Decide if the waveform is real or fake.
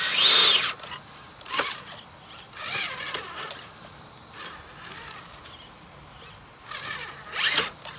real